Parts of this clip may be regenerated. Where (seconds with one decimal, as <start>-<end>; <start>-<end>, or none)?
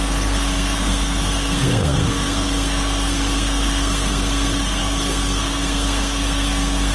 0.0-6.9